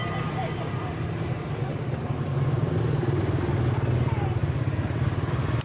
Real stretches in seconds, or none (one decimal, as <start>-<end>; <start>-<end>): 3.4-4.4

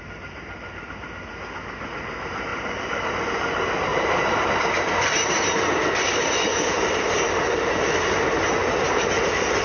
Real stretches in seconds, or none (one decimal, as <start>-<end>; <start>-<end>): 0.0-2.5; 3.1-3.9; 5.6-6.5; 8.1-8.6